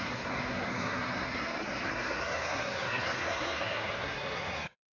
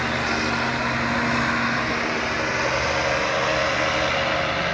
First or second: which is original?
second